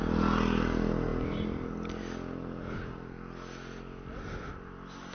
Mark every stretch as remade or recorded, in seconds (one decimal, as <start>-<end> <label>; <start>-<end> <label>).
0.0-5.1 recorded